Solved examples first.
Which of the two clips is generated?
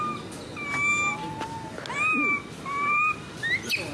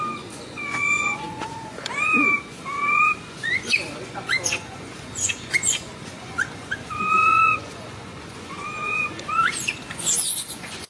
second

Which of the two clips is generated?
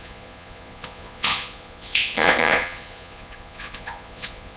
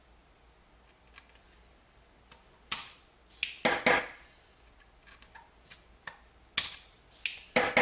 first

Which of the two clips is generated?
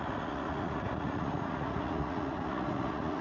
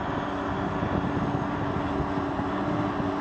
first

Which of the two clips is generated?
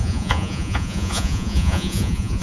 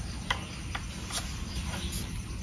first